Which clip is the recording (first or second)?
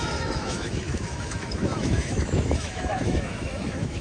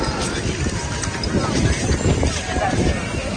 second